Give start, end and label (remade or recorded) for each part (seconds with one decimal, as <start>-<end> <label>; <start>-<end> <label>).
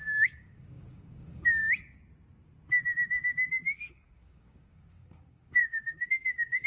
0.0-1.6 remade; 1.6-3.9 recorded; 3.9-6.7 remade